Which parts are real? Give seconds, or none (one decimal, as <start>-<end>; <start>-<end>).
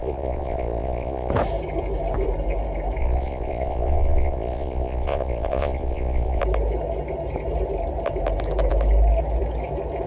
1.3-3.0; 6.4-10.1